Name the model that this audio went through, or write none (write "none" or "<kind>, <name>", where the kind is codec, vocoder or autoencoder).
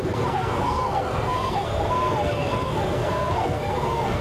codec, SNAC